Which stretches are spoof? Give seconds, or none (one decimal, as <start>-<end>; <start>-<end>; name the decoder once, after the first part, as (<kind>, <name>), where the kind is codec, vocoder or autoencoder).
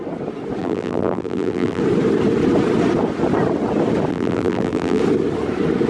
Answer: 0.6-1.8 (vocoder, BigVGAN v2); 4.1-5.0